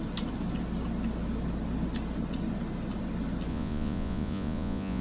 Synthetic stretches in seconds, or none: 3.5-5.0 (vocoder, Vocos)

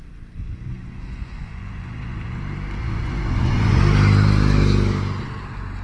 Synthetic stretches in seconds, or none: 0.7-2.4 (vocoder, Vocos); 2.8-3.8

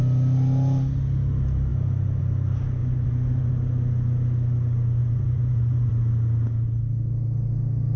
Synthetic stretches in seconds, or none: 2.8-3.5 (vocoder, Vocos); 5.0-5.9

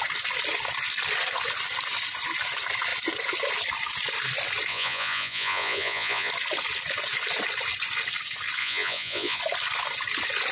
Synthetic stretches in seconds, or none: 4.7-6.3 (vocoder, Vocos); 8.6-9.4

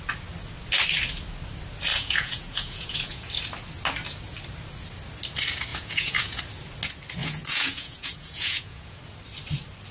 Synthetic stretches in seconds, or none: 1.9-3.3 (vocoder, Vocos); 5.7-6.4; 7.2-9.0